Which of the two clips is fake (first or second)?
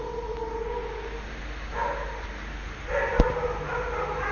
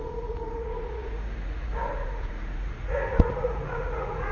second